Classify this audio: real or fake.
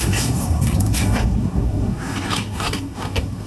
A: fake